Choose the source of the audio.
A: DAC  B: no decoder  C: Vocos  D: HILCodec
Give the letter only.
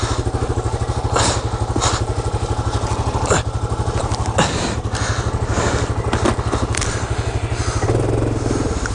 B